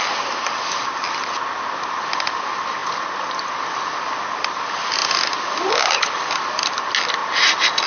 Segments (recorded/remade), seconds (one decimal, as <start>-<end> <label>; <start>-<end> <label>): 0.0-2.8 recorded; 2.8-4.0 remade; 4.0-7.2 recorded; 7.2-7.9 remade